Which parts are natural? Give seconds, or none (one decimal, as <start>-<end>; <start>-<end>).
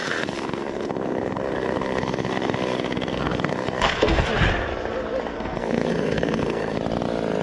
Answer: 4.3-5.3; 6.8-7.4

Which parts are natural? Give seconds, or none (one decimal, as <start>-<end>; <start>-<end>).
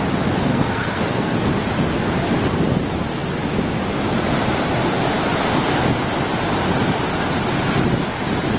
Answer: 0.0-0.5; 1.5-8.6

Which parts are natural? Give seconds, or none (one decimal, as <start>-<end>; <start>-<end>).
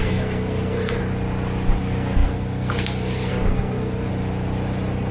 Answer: 1.0-1.8; 4.1-5.1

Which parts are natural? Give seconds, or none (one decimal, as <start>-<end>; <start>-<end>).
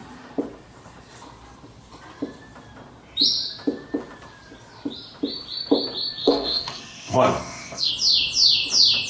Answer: 0.0-6.2; 7.9-9.1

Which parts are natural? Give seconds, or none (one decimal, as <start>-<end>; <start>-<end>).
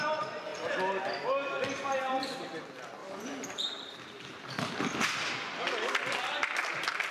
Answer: 0.0-3.0; 4.8-7.1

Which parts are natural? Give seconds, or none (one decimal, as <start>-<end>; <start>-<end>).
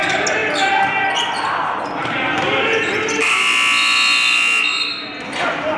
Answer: 0.0-5.8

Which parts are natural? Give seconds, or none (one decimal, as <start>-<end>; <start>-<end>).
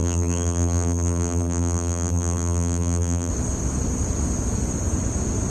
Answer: 3.3-5.5